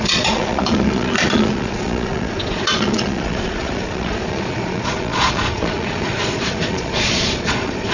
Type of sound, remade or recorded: remade